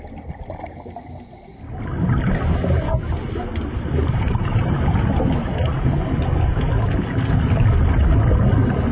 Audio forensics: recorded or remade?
recorded